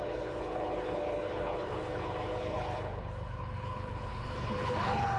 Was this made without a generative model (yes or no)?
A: no